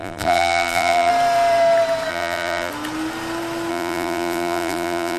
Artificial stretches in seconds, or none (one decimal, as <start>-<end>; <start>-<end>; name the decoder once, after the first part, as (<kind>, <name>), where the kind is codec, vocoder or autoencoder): 0.0-1.1 (vocoder, BigVGAN v2); 2.1-2.7; 3.7-5.2